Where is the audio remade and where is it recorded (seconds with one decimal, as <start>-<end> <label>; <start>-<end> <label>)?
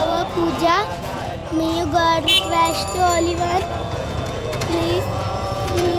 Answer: 0.0-1.4 remade; 1.4-3.7 recorded; 3.7-6.0 remade